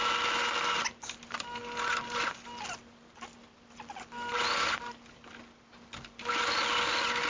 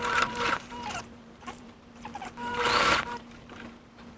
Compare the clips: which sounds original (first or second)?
first